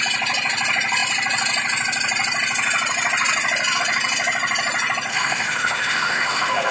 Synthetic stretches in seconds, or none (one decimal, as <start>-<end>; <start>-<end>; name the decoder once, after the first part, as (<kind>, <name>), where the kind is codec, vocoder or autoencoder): 5.1-6.7 (autoencoder, DAC-VAE)